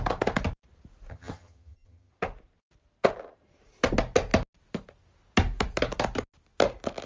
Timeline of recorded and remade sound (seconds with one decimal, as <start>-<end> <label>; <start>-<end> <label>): 0.0-1.1 recorded; 1.1-2.1 remade; 2.1-7.1 recorded